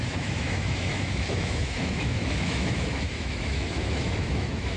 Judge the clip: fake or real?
fake